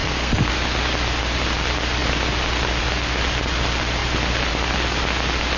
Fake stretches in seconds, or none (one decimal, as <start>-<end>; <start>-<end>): 0.0-0.5